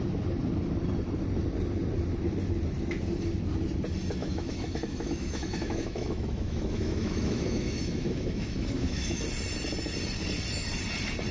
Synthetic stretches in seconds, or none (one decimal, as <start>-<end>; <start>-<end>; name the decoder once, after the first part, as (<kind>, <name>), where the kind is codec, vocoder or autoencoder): 4.2-9.2 (autoencoder, DAC-VAE)

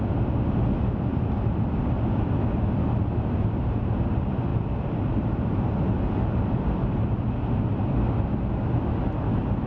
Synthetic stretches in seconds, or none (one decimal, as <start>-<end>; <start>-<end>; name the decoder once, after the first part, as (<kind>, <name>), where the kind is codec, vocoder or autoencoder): none

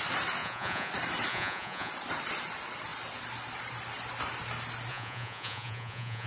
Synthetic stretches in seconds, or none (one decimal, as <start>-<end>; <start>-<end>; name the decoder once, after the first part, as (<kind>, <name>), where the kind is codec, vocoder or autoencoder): 0.4-0.9 (vocoder, Vocos); 1.3-1.9; 4.9-6.3

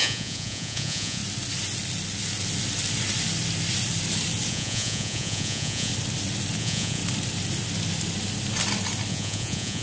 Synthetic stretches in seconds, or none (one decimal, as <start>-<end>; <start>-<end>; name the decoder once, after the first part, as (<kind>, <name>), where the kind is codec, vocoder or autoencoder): 0.0-1.2 (vocoder, Vocos); 4.5-5.9; 6.6-7.0; 9.1-9.8

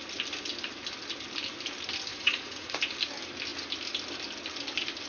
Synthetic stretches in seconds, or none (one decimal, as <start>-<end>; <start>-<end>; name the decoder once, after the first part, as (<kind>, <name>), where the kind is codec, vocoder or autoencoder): 2.1-2.8 (vocoder, Vocos)

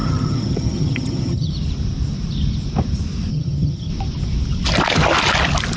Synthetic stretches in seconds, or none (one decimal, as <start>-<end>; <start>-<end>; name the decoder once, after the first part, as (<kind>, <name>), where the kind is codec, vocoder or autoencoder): 0.0-1.5 (vocoder, HiFi-GAN); 3.3-3.9

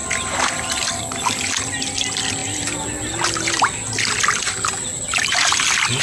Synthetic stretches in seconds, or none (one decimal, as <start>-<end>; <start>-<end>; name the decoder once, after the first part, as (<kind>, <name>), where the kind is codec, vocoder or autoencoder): none